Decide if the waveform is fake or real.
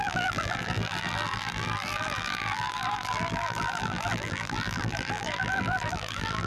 fake